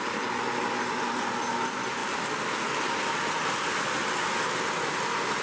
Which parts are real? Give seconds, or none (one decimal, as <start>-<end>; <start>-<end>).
0.0-5.4